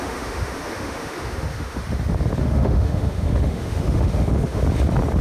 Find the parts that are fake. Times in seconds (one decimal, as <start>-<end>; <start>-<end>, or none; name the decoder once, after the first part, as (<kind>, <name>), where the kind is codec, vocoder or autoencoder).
0.0-1.8 (autoencoder, DAC-VAE); 2.4-4.6